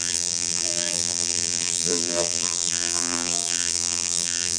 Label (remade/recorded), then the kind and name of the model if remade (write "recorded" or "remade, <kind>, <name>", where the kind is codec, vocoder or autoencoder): remade, vocoder, BigVGAN v2